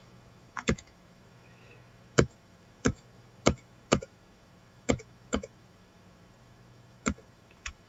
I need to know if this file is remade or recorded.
remade